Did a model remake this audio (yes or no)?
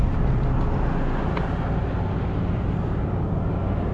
no